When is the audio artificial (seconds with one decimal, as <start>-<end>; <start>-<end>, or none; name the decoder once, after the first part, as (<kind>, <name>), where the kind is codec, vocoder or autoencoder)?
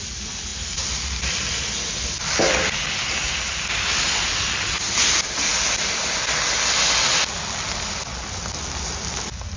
none